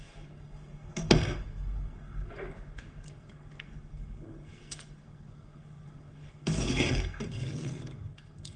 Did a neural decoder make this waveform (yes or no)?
yes